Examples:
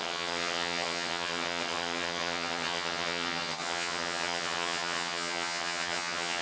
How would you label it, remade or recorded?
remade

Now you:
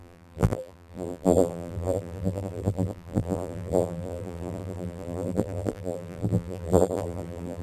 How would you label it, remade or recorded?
remade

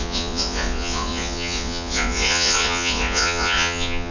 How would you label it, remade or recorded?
remade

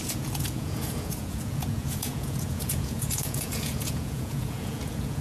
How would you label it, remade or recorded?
remade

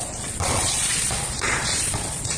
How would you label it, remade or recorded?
remade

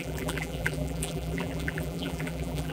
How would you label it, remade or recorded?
remade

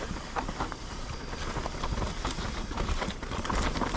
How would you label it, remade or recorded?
recorded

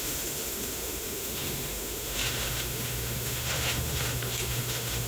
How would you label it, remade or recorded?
remade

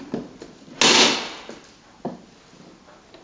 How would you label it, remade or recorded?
recorded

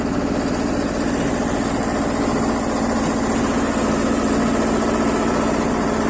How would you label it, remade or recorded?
recorded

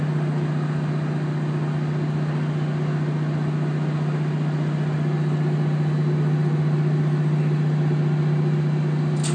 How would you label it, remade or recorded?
recorded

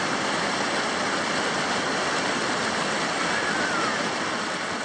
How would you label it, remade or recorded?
recorded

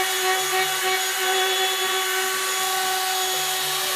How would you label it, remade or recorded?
recorded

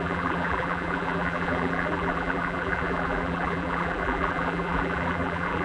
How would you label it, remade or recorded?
remade